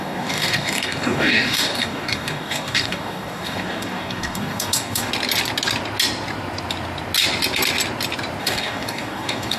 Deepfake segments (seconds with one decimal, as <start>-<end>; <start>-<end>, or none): 0.0-5.1; 8.4-9.6